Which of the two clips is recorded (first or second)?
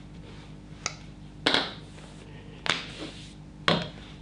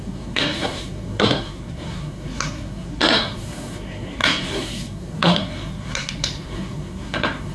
first